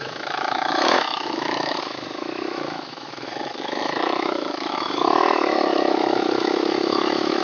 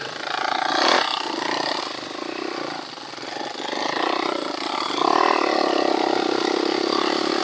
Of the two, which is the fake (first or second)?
first